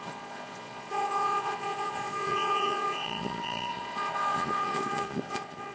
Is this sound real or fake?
fake